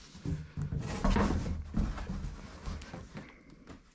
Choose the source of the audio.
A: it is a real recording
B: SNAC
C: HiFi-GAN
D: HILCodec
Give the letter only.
A